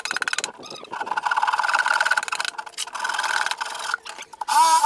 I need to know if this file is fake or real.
real